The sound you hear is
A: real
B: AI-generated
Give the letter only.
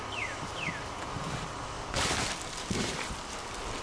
B